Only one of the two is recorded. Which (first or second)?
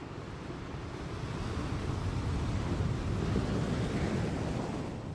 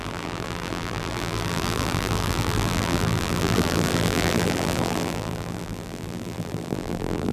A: first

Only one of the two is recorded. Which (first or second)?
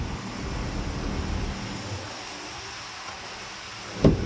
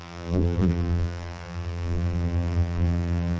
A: first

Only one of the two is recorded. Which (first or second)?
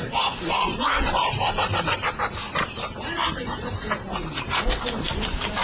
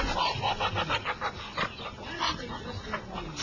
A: second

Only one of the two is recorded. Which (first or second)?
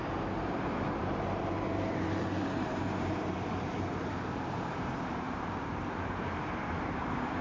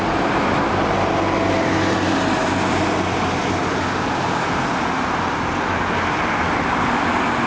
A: second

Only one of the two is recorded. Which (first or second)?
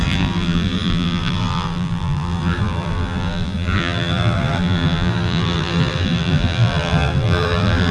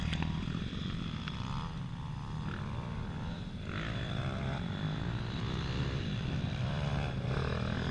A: second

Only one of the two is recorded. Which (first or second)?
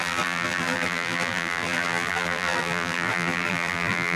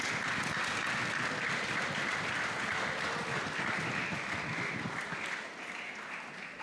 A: second